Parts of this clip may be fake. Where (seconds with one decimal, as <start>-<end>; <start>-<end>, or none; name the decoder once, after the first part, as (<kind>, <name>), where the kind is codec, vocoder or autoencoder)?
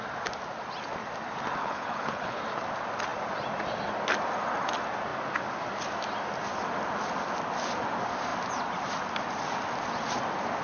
1.6-2.4 (codec, HILCodec)